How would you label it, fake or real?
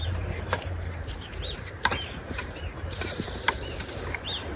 fake